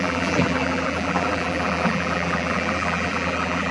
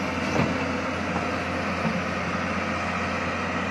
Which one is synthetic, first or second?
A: first